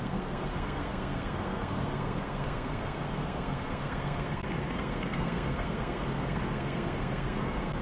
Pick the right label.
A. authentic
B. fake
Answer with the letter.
B